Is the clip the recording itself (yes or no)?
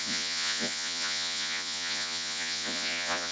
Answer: no